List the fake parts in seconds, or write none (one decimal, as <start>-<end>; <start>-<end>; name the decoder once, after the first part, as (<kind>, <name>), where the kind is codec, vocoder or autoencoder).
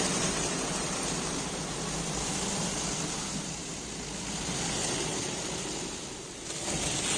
none